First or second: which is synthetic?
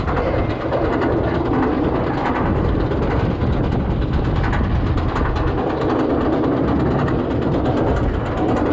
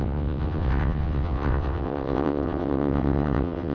second